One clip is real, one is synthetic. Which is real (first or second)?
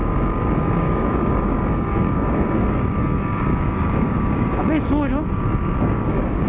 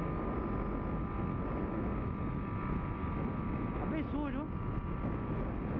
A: second